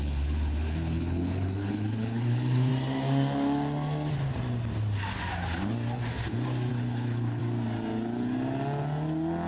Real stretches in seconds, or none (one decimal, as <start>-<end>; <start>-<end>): 2.7-6.7; 7.4-9.5